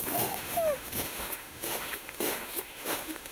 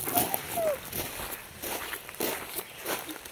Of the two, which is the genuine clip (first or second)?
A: second